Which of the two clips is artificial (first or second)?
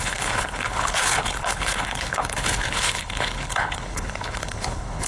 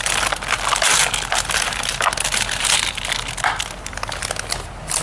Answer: first